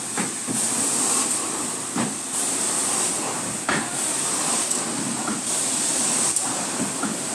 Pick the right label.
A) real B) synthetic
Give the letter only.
B